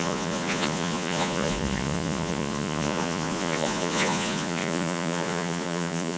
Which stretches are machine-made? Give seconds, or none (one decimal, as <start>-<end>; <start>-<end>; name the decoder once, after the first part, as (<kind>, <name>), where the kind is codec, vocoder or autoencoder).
0.0-6.2 (vocoder, Vocos)